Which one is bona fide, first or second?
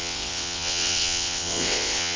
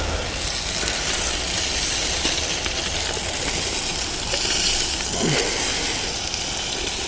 second